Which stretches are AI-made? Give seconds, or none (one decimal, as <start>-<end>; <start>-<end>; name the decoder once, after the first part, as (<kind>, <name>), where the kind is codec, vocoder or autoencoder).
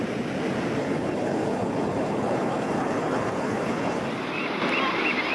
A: 0.8-4.0 (codec, HILCodec)